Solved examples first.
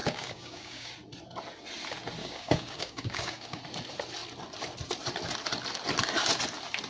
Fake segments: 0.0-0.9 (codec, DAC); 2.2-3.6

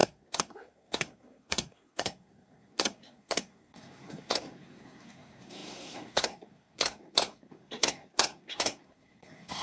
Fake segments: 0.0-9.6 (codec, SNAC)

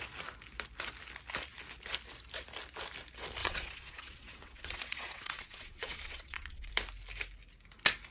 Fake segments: 3.4-6.7 (vocoder, WaveNeXt)

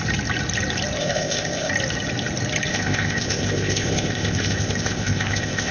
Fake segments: 1.0-1.7 (codec, ZipCodec); 2.7-5.7